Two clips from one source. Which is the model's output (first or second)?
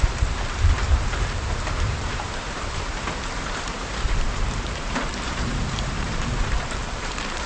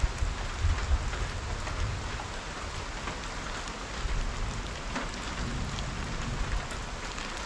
first